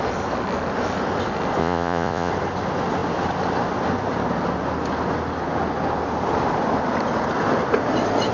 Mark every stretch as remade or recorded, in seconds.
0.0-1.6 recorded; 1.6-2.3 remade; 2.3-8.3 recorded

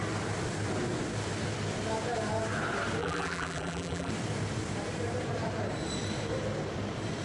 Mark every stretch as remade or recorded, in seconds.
0.0-3.0 recorded; 3.0-4.1 remade; 4.1-7.2 recorded

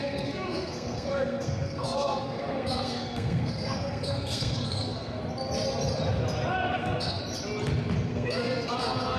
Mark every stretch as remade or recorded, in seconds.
0.0-5.2 remade; 5.2-6.7 recorded; 6.7-7.2 remade; 7.2-8.1 recorded; 8.1-9.2 remade

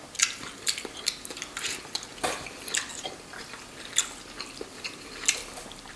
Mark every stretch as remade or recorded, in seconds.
0.0-6.0 recorded